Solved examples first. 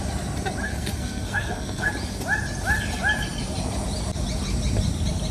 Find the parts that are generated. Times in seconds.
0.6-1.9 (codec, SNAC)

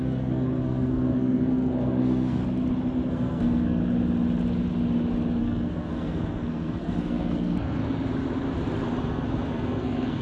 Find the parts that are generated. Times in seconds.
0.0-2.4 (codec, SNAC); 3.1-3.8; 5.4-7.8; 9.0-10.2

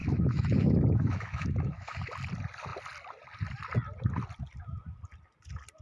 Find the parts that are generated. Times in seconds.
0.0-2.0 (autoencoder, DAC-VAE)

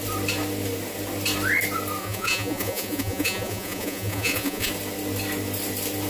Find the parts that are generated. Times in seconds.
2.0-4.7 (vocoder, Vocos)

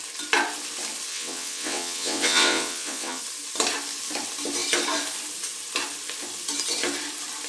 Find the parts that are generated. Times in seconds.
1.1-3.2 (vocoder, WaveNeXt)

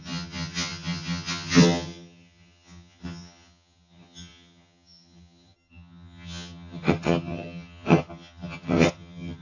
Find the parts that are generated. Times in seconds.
0.0-9.4 (vocoder, HiFi-GAN)

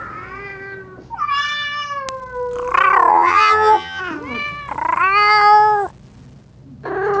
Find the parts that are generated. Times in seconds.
3.1-4.0 (vocoder, HiFi-GAN)